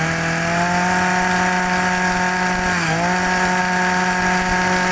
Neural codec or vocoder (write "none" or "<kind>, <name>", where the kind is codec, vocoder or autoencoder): none